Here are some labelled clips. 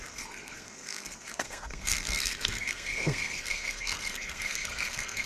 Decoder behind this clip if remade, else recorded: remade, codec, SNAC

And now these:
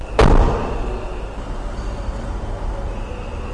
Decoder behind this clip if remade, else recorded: recorded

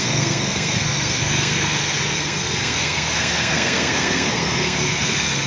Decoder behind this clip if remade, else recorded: remade, codec, SNAC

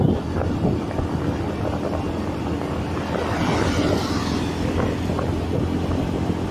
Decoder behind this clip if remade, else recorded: recorded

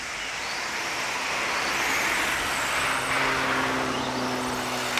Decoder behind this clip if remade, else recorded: recorded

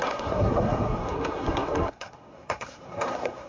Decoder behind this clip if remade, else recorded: remade, codec, SNAC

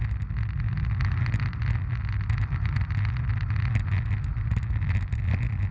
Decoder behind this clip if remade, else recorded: recorded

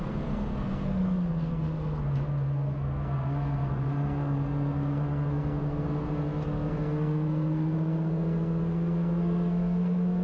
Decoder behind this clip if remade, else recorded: remade, codec, SNAC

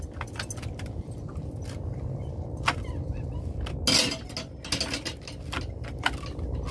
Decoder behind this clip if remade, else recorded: recorded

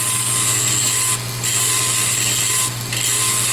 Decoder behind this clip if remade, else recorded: recorded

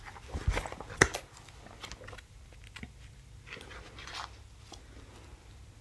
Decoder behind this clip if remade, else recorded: recorded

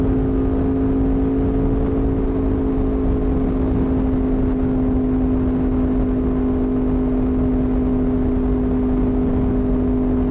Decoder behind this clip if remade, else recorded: recorded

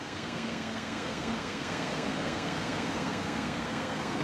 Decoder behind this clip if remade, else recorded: remade, codec, SNAC